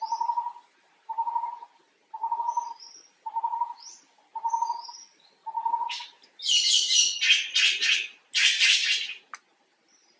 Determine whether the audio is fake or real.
real